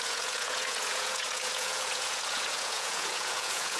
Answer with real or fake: fake